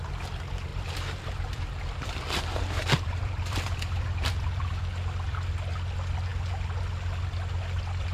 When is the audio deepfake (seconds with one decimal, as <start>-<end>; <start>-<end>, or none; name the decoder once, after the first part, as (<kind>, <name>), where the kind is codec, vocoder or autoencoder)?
0.7-4.8 (vocoder, BigVGAN v2)